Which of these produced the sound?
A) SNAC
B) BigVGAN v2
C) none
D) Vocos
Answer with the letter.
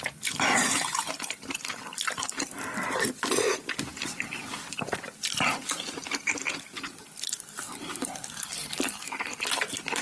B